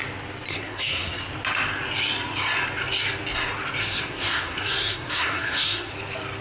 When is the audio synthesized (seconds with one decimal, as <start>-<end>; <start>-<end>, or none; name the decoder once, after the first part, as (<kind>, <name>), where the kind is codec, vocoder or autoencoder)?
0.5-1.3 (codec, SNAC); 3.8-5.9